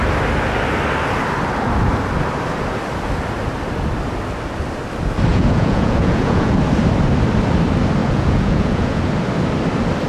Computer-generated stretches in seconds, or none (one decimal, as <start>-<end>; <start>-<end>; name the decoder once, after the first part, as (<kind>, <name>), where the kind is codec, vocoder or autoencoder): 5.3-6.6 (vocoder, Vocos); 8.0-9.0